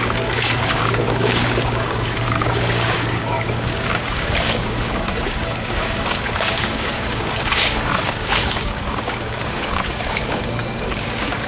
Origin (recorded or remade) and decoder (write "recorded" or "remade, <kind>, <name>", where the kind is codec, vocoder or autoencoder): remade, codec, DAC